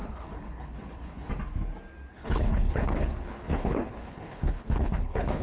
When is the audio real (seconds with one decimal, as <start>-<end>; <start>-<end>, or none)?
1.3-2.1